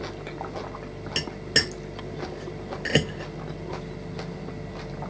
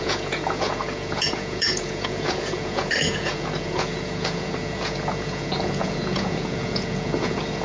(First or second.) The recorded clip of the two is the first